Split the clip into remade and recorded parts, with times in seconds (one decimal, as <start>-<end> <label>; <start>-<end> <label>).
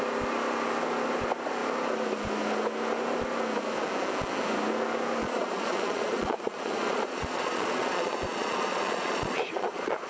0.0-5.2 recorded; 5.2-10.1 remade